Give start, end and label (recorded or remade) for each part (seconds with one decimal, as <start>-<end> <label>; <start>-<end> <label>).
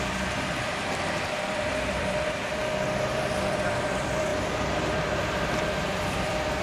0.0-2.6 remade; 2.6-3.1 recorded; 3.1-6.6 remade